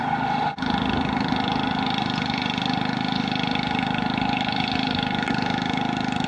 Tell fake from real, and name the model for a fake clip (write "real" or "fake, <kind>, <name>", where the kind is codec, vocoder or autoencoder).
real